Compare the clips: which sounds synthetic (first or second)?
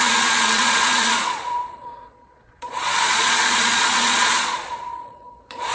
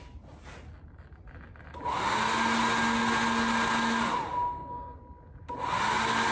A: first